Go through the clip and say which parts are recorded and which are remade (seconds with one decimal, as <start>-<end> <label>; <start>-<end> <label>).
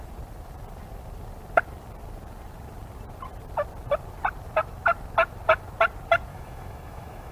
0.0-6.3 recorded; 6.3-7.3 remade